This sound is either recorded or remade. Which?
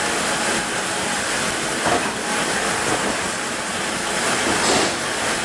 recorded